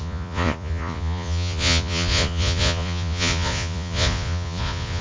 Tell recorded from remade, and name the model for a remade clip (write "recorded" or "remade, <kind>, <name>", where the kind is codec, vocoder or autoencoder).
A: remade, vocoder, Vocos